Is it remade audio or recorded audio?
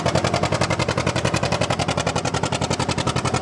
recorded